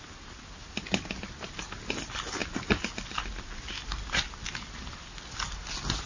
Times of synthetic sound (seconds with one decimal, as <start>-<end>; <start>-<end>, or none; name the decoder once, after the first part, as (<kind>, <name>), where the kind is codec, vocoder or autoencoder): none